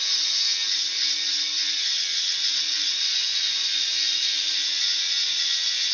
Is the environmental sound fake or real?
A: real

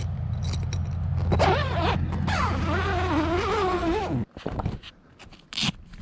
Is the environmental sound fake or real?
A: real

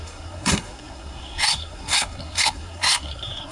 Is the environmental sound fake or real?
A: fake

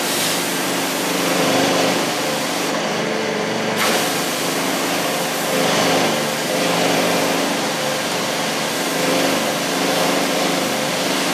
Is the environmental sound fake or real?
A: fake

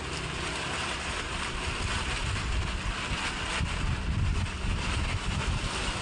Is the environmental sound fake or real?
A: real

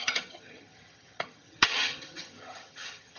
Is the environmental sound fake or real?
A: fake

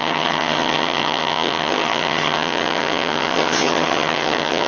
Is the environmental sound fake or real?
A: fake